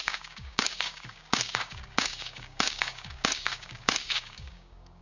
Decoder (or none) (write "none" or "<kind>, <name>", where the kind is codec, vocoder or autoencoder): codec, DAC